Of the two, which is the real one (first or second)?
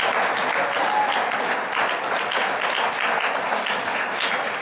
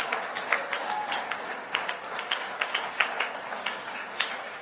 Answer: first